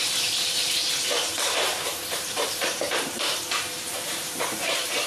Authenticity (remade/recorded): remade